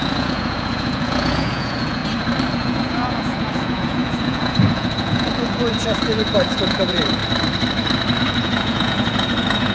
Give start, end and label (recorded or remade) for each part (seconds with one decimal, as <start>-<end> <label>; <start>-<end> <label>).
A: 0.0-2.0 remade; 2.0-2.5 recorded; 2.5-7.2 remade; 7.2-8.2 recorded; 8.2-9.7 remade